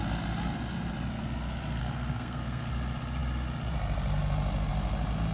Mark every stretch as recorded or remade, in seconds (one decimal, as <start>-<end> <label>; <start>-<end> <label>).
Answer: 0.0-1.8 recorded; 1.8-2.7 remade; 2.7-5.3 recorded